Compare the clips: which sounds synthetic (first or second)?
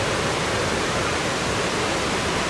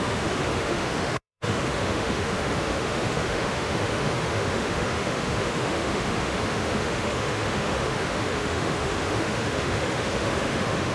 second